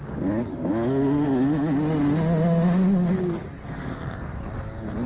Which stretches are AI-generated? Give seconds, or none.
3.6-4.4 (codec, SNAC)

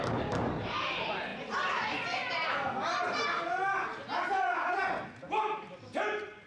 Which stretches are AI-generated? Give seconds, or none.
none

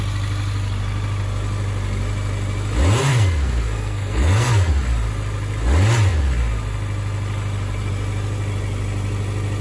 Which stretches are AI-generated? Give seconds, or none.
3.1-4.7 (codec, SNAC)

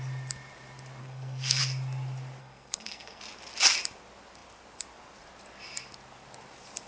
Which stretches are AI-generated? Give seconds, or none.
1.0-1.6 (codec, SNAC); 2.4-3.2

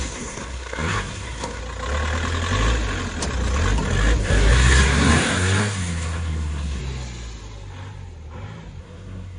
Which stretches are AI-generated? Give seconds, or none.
0.0-1.6 (codec, SNAC); 4.2-6.8; 8.8-9.4

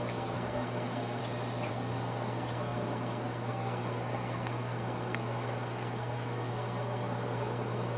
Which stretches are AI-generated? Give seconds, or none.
0.0-1.2 (codec, SNAC); 1.7-8.0

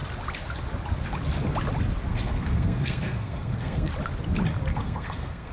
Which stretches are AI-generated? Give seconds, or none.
2.1-3.9 (codec, SNAC); 4.7-5.5